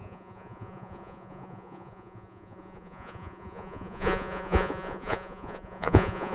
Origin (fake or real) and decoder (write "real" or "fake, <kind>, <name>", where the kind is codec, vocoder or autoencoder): fake, vocoder, Vocos